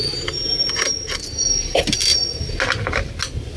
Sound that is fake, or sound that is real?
real